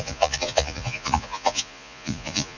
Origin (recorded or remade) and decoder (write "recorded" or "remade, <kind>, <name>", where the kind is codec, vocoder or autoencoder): remade, vocoder, Vocos